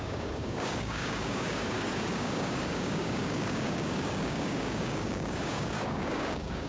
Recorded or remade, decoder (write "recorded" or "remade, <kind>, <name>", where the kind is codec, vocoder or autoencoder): remade, codec, DAC